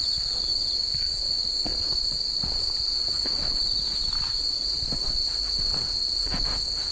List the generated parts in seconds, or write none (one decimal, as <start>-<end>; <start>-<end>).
1.7-5.4